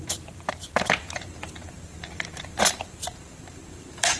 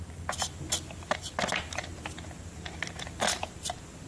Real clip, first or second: second